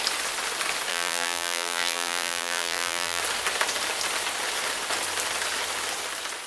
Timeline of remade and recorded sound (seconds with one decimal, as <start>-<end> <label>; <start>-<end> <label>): 0.0-0.9 recorded; 0.9-3.2 remade; 3.2-6.5 recorded